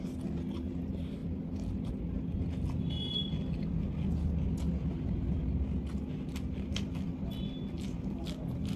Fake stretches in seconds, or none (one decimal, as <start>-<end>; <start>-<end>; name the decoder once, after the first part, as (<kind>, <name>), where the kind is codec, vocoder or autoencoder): none